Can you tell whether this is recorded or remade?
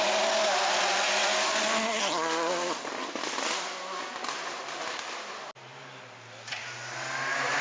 recorded